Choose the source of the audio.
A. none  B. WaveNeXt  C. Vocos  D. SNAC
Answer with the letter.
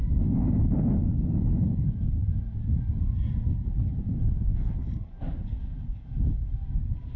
A